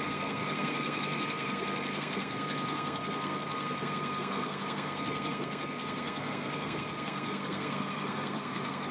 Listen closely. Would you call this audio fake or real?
fake